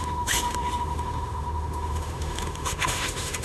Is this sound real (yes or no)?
no